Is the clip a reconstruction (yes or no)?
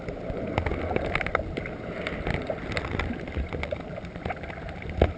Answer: no